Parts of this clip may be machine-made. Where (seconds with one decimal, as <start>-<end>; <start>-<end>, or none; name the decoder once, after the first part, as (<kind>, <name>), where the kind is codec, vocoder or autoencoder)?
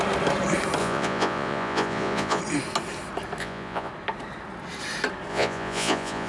0.8-2.4 (vocoder, Vocos); 3.4-3.9; 5.3-6.3